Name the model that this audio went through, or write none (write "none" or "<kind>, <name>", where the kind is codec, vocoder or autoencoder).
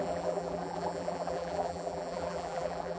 vocoder, BigVGAN v2